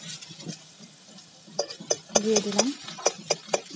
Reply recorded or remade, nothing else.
recorded